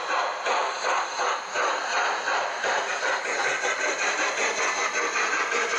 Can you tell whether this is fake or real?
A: real